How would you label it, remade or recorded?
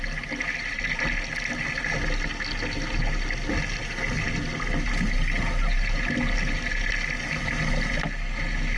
recorded